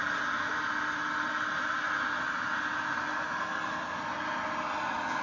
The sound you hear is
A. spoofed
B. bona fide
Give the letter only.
B